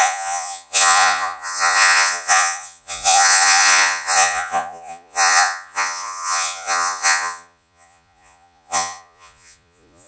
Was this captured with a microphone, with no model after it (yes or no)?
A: no